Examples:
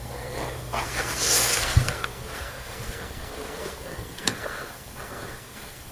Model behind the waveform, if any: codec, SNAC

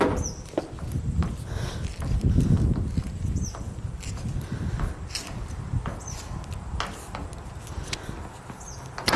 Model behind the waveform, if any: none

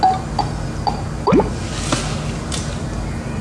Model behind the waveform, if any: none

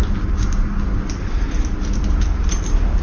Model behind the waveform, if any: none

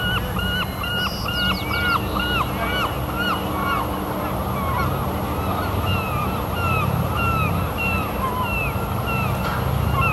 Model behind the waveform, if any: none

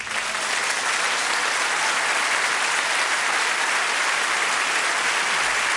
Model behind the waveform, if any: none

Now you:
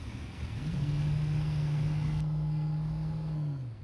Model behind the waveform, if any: codec, SNAC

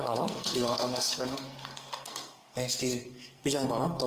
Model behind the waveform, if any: codec, SNAC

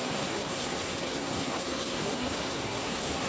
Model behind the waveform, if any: codec, SNAC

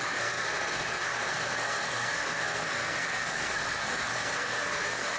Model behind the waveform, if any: codec, SNAC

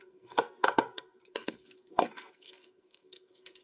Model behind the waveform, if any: codec, SNAC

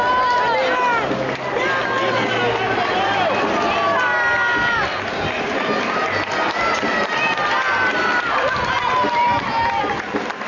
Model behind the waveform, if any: none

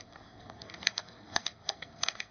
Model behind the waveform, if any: codec, SNAC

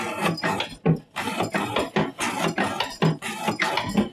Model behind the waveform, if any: none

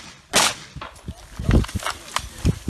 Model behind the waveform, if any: none